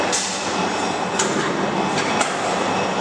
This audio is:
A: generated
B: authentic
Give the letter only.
B